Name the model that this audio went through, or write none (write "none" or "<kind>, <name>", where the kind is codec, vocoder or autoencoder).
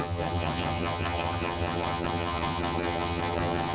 vocoder, HiFi-GAN